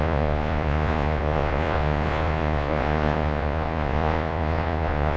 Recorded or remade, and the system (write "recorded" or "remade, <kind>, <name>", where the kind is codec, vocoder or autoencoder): remade, vocoder, Vocos